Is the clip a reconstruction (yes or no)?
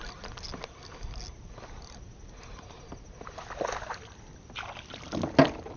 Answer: no